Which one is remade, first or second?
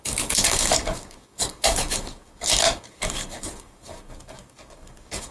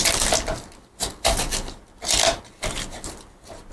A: first